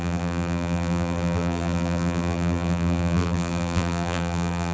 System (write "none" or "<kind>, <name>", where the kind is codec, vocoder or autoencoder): vocoder, BigVGAN v2